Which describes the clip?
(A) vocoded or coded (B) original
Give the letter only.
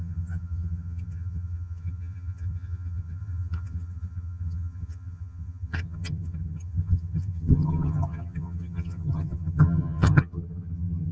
A